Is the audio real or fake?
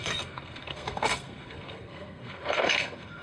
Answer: fake